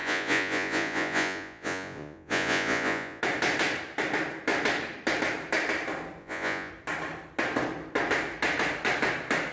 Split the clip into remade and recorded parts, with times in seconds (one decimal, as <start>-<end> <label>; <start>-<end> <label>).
0.0-3.2 remade; 3.2-6.2 recorded; 6.2-6.7 remade; 6.7-9.5 recorded